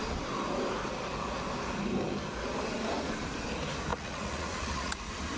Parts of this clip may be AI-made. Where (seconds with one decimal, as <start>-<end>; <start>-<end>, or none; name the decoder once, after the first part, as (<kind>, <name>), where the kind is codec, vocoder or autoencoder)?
3.9-5.0 (vocoder, Vocos)